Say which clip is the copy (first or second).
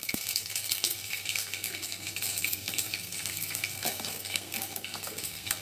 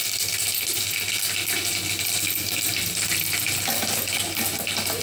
first